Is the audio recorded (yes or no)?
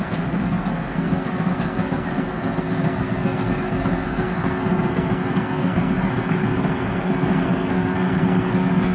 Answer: no